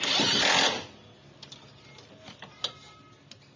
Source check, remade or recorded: recorded